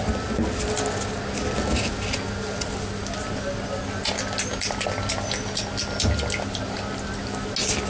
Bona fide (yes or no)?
yes